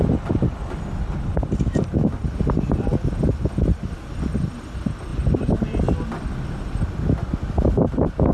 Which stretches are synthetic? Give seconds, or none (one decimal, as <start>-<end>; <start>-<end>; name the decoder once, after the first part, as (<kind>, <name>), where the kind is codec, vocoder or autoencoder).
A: none